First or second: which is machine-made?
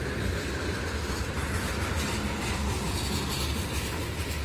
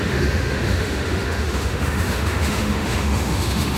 second